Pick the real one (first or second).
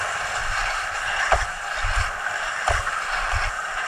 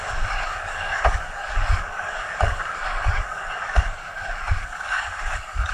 first